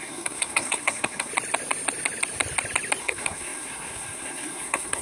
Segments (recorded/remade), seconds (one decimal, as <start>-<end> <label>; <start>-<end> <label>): 0.0-1.3 remade; 1.3-3.0 recorded; 3.0-5.0 remade